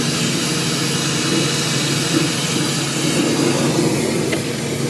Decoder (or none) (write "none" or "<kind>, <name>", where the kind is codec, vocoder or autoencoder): none